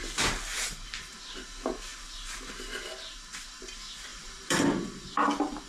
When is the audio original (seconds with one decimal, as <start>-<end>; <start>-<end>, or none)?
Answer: 0.0-4.1; 4.9-5.7